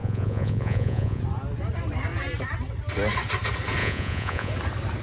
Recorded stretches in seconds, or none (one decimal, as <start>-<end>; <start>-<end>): 1.2-3.8; 4.5-5.0